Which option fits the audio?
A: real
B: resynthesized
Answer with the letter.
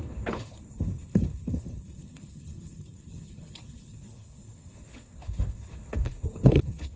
B